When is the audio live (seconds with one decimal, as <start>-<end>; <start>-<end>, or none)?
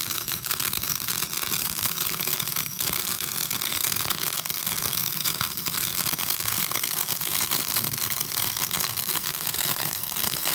1.1-1.6